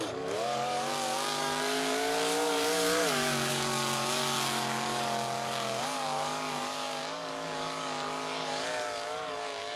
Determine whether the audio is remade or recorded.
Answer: remade